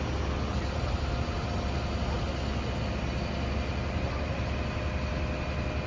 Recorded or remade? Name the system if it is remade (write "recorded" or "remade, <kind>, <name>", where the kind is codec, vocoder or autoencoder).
recorded